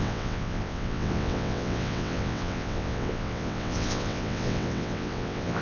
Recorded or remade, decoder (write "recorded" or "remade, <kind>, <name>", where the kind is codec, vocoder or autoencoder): remade, vocoder, WaveNeXt